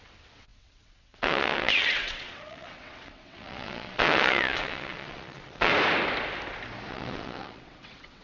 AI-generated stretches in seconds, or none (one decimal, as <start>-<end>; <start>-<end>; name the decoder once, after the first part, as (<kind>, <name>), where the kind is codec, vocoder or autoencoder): 0.0-5.7 (vocoder, WaveNeXt); 6.9-8.2